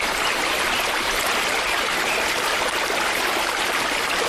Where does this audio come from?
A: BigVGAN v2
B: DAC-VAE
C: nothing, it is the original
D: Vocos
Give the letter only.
C